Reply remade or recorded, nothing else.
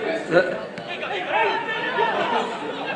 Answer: remade